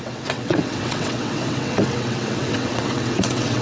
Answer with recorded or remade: remade